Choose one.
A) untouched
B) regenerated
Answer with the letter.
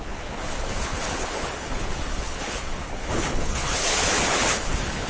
B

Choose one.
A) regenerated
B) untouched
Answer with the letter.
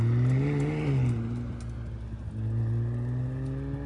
B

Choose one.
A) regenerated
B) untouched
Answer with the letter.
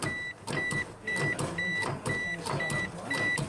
B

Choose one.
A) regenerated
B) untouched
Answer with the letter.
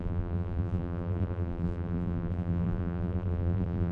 A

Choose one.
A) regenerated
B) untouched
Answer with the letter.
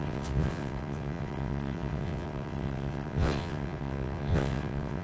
A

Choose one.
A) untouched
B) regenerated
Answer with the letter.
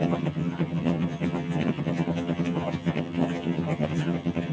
B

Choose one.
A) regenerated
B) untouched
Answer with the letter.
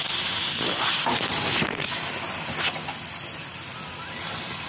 A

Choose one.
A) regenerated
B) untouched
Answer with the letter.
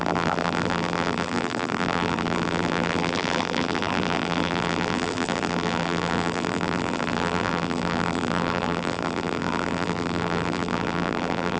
A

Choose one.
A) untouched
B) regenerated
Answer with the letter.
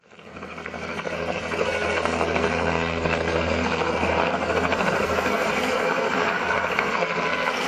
B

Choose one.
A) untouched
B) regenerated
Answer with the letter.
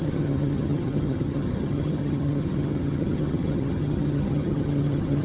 B